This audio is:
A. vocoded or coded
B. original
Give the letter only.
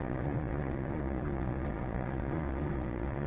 A